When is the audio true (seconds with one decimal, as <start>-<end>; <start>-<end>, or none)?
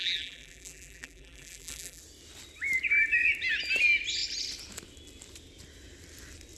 2.0-6.6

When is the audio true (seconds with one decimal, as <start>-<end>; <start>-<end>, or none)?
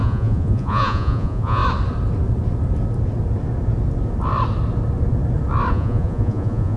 1.6-5.7